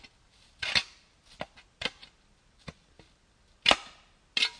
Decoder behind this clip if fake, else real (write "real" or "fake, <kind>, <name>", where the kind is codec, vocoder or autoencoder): real